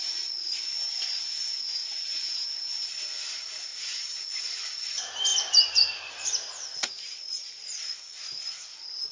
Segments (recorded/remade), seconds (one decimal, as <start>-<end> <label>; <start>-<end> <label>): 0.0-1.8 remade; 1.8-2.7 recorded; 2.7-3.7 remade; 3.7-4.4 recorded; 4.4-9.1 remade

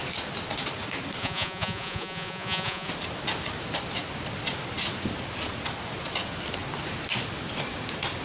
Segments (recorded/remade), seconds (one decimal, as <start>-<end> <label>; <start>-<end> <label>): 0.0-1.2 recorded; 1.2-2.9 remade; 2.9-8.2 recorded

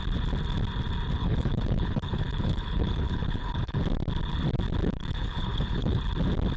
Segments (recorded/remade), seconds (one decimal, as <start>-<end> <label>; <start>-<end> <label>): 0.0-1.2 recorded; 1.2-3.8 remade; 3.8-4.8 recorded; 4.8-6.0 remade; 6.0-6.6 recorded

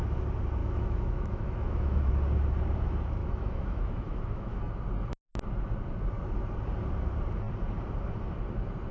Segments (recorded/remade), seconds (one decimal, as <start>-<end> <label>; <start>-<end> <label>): 0.0-0.6 recorded; 0.6-2.1 remade; 2.1-3.2 recorded; 3.2-4.6 remade; 4.6-8.9 recorded